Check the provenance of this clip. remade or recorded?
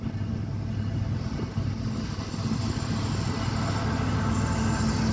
recorded